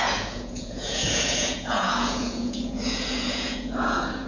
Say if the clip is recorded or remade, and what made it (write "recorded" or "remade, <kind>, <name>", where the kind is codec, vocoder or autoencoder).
remade, vocoder, Vocos